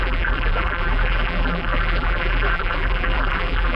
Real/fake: fake